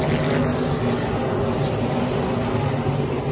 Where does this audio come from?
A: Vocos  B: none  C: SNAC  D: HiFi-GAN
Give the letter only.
B